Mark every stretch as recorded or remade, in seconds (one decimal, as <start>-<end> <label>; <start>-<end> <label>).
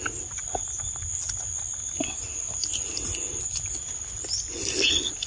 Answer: 0.0-5.3 recorded